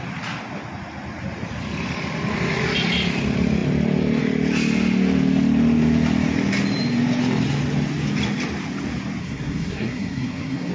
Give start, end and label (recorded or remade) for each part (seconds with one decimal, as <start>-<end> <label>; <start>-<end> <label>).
0.0-9.2 recorded; 9.2-10.7 remade